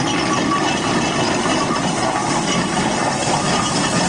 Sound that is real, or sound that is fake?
real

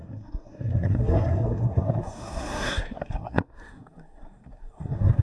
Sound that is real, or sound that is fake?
fake